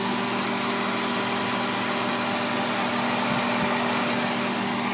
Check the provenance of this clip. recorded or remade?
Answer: recorded